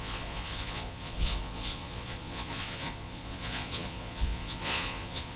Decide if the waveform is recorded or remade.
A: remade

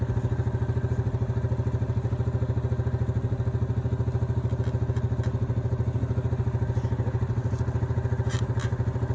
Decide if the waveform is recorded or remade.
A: recorded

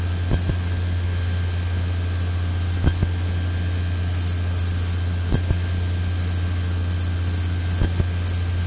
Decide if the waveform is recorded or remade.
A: recorded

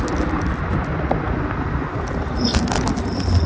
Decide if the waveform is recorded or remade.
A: recorded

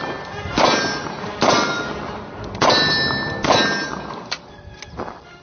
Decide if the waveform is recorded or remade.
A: recorded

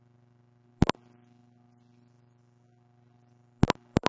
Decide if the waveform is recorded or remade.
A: recorded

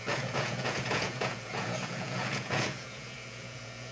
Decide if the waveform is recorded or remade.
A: remade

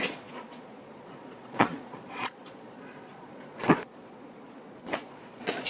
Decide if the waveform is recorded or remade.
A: remade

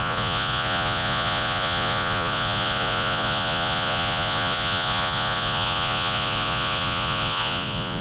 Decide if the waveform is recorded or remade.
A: remade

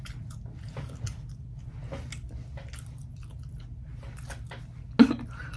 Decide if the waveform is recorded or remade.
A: recorded